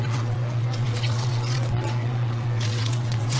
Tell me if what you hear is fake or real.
fake